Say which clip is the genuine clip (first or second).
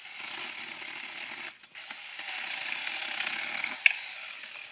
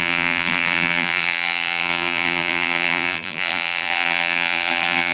first